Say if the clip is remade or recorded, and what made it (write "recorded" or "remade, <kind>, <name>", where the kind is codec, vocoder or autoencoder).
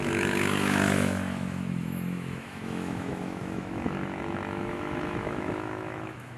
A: remade, autoencoder, DAC-VAE